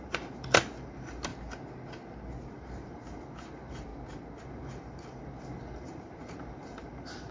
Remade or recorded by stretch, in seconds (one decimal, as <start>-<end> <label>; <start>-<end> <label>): 0.0-1.3 remade; 1.3-2.5 recorded; 2.5-3.9 remade; 3.9-4.4 recorded; 4.4-7.3 remade